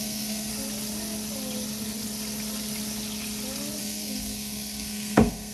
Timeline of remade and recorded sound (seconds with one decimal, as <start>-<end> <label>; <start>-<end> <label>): 0.0-0.5 remade; 0.5-3.8 recorded; 3.8-5.5 remade